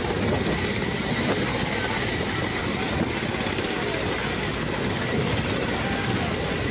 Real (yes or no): yes